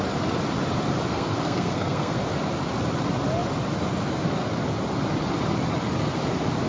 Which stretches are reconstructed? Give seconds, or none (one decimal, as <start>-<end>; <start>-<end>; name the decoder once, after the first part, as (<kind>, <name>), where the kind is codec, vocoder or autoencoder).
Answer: 1.1-2.2 (codec, SNAC)